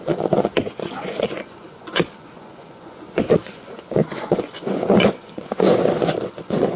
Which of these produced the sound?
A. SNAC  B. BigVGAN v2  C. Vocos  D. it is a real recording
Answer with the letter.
C